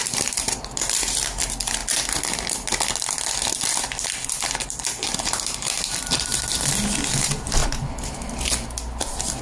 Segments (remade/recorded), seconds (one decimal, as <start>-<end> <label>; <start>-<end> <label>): 0.0-1.8 remade; 1.8-2.9 recorded; 2.9-7.6 remade; 7.6-9.4 recorded